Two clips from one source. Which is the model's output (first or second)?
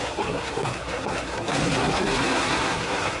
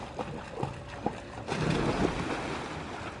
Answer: first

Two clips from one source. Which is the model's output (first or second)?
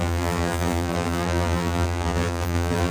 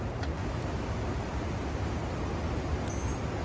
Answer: first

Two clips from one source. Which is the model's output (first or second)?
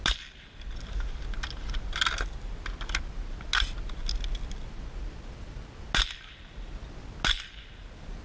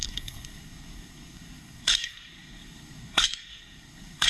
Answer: second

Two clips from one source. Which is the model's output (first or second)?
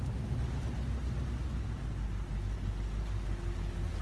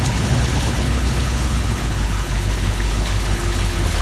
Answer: second